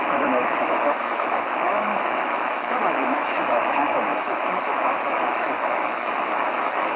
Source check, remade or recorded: remade